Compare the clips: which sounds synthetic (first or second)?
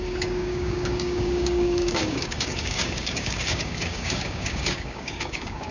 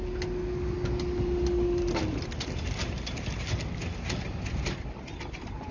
first